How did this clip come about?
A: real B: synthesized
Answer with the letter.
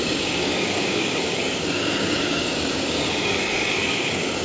B